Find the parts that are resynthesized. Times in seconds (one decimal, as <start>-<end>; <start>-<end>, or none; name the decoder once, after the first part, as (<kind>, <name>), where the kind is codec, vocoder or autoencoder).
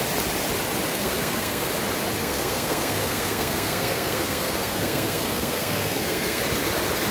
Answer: 0.9-1.7 (codec, SNAC); 2.2-6.4